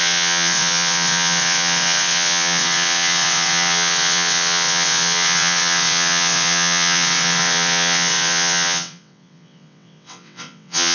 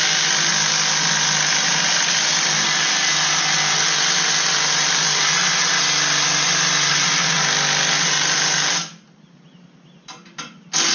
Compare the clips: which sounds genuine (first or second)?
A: second